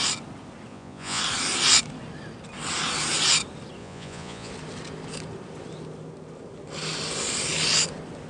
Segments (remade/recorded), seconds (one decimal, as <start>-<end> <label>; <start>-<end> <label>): 0.0-0.7 recorded; 0.7-1.2 remade; 1.2-3.8 recorded; 3.8-4.5 remade; 4.5-8.3 recorded